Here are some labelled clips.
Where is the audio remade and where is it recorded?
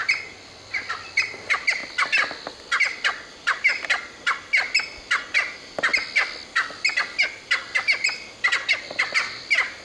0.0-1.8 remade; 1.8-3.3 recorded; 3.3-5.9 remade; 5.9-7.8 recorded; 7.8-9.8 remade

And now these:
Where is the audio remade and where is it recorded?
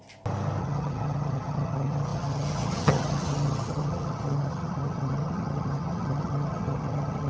0.0-0.6 recorded; 0.6-7.3 remade